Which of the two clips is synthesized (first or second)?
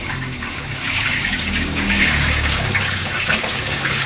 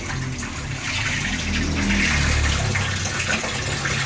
first